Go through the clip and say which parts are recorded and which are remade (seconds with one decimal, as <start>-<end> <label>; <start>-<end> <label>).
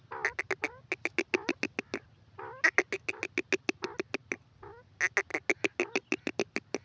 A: 0.0-6.8 recorded